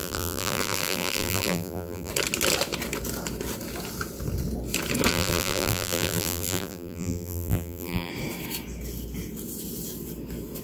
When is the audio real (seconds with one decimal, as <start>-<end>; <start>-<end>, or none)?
2.1-5.1; 8.1-10.6